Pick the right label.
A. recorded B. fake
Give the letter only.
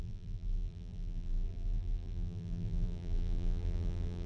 B